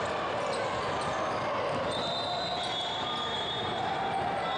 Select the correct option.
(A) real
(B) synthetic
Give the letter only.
A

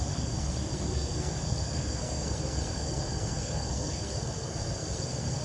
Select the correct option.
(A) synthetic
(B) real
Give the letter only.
A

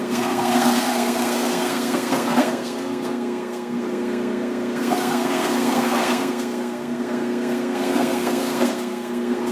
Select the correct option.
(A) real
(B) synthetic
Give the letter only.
B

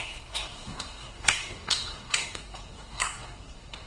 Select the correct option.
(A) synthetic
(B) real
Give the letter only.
A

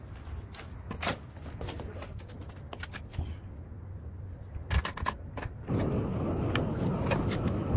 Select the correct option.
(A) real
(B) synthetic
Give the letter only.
A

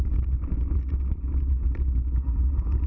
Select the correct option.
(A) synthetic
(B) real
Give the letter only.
B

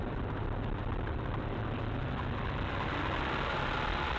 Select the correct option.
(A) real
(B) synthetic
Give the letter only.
A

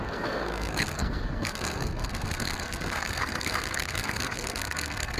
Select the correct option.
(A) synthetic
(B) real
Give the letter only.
A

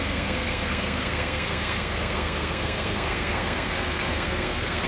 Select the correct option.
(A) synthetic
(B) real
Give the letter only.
A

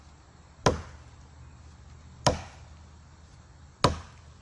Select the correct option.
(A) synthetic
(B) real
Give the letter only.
B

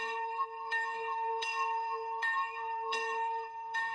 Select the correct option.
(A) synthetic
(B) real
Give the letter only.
A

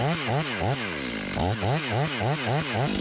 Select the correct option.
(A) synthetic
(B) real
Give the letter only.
B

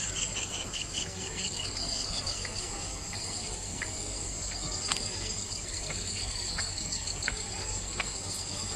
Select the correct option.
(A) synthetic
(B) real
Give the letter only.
A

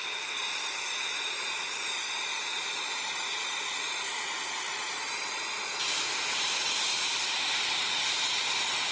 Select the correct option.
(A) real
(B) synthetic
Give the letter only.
A